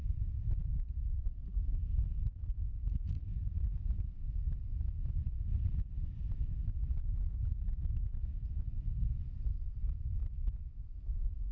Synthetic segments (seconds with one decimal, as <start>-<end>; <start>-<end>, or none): 10.2-11.5